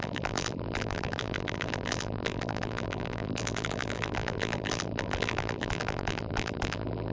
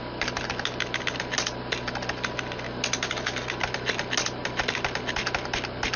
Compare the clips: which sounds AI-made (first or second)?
first